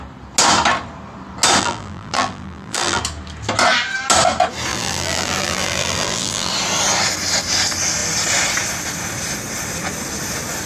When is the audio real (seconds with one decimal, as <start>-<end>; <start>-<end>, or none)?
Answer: 0.0-1.6; 3.0-4.7; 6.5-10.7